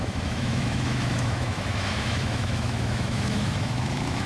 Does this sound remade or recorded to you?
remade